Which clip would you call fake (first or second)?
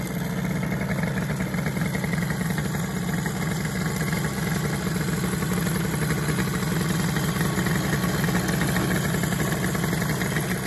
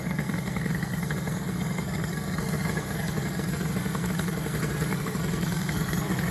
second